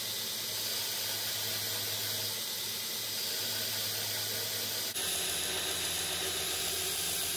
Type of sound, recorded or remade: recorded